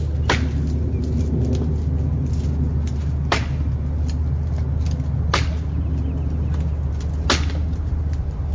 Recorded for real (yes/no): yes